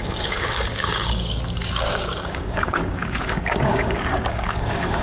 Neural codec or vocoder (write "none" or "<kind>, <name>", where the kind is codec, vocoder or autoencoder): codec, DAC